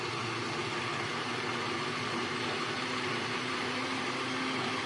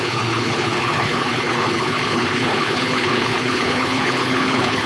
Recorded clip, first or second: first